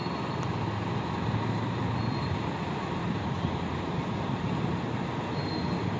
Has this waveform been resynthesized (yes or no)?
no